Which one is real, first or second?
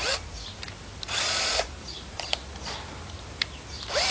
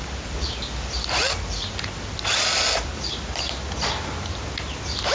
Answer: second